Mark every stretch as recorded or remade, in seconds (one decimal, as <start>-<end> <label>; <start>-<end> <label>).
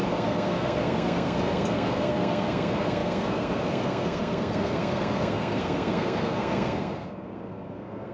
0.0-8.1 remade